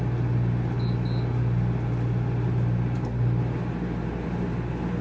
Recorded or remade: recorded